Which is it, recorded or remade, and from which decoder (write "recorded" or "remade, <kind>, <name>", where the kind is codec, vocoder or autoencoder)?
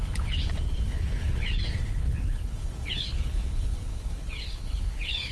remade, codec, HILCodec